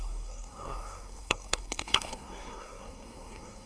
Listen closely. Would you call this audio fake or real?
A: fake